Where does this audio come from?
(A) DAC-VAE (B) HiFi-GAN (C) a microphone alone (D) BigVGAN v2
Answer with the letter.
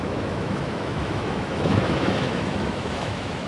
A